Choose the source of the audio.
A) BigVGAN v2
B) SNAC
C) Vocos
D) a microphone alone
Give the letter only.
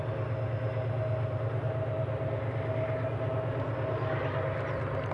D